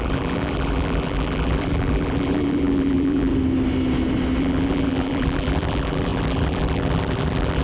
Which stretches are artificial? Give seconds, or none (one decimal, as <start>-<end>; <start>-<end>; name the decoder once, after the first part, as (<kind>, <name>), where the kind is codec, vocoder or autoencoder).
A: 0.0-3.3 (vocoder, BigVGAN v2); 4.4-7.6